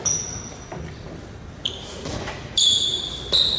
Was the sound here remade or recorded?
recorded